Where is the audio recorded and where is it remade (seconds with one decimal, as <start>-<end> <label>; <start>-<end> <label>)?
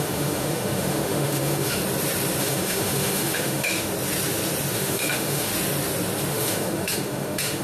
0.0-1.8 remade; 1.8-2.4 recorded; 2.4-3.9 remade; 3.9-4.7 recorded; 4.7-5.5 remade; 5.5-6.3 recorded; 6.3-7.6 remade